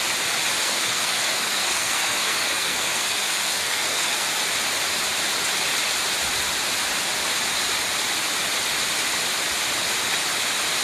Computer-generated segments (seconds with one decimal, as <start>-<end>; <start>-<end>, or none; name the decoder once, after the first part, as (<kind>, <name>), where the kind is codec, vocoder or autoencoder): 0.6-4.4 (codec, SNAC)

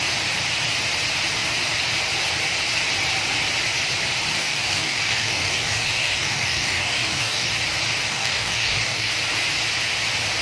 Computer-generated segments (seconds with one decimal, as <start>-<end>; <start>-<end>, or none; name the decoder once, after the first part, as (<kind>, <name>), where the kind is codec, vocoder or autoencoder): 4.3-7.5 (codec, DAC); 8.1-9.1

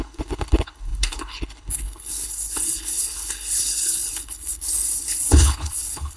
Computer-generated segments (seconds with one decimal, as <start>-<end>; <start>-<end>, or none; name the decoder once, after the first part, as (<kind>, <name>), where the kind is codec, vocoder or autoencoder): 0.0-6.2 (codec, HILCodec)

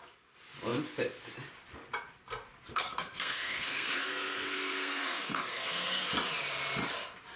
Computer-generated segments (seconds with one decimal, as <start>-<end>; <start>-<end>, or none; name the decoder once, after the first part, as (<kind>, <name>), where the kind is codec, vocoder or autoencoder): 2.7-6.1 (codec, SNAC)

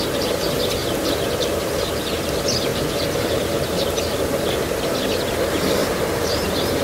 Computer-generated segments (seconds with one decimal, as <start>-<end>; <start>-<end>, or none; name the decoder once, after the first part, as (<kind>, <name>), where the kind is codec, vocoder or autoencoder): 2.7-4.0 (vocoder, BigVGAN v2); 5.8-6.8

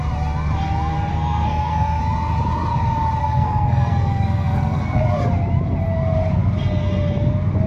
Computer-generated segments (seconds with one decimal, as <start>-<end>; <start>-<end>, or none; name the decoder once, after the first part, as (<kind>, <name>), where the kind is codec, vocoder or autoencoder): 1.1-2.0 (codec, SNAC); 3.2-5.0